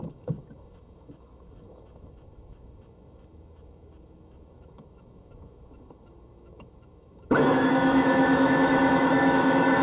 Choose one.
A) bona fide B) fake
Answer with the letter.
B